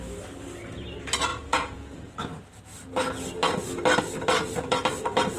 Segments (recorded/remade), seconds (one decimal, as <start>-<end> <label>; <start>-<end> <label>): 0.0-1.3 recorded; 1.3-2.1 remade; 2.1-5.4 recorded